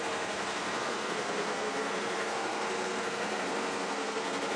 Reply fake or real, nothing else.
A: fake